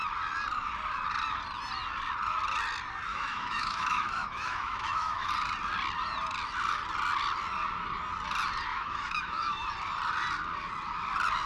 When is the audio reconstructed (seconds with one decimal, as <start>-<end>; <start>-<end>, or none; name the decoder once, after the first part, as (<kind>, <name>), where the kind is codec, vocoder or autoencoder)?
3.1-5.3 (autoencoder, DAC-VAE); 8.7-9.7